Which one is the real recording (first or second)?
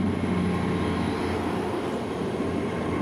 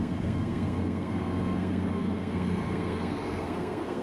first